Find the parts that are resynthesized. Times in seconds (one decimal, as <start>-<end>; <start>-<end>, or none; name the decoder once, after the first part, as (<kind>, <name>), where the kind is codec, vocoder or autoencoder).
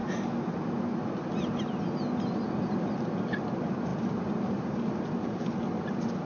3.9-5.6 (vocoder, BigVGAN v2)